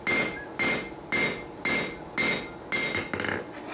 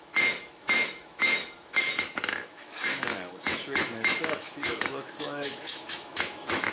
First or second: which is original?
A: first